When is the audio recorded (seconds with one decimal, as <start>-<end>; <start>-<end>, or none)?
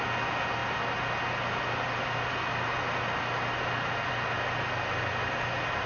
0.0-5.9